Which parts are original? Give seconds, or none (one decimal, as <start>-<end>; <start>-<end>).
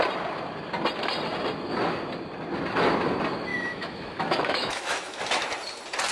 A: 0.0-3.5; 5.2-6.1